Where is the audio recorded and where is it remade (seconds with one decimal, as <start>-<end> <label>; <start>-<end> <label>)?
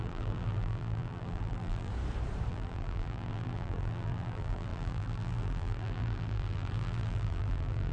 0.0-1.9 remade; 1.9-2.5 recorded; 2.5-7.9 remade